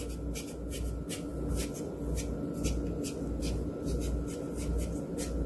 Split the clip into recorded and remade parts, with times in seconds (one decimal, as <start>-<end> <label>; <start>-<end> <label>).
0.0-5.5 recorded